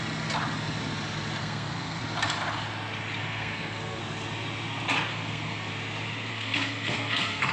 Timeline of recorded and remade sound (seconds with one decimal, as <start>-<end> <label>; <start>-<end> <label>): 0.0-1.4 recorded; 1.4-2.0 remade; 2.0-3.2 recorded; 3.2-4.0 remade; 4.0-5.1 recorded; 5.1-5.7 remade; 5.7-6.3 recorded; 6.3-7.5 remade